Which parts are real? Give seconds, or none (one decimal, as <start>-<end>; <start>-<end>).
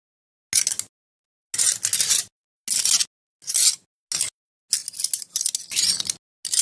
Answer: 0.0-6.6